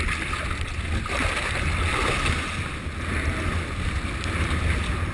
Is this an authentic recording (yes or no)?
yes